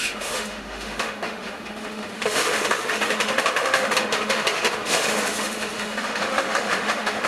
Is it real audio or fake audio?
fake